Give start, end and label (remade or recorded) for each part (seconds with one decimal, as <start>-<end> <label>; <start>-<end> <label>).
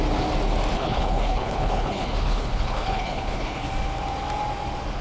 0.0-0.7 recorded; 0.7-3.7 remade; 3.7-5.0 recorded